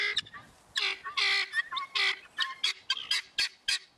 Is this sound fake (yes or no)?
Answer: no